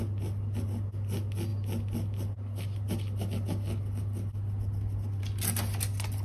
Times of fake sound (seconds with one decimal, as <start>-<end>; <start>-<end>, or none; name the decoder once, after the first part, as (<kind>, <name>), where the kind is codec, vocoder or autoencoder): none